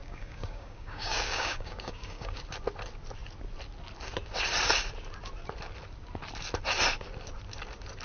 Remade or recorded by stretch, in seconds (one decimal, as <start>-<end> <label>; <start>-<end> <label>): 0.0-2.4 remade; 2.4-8.0 recorded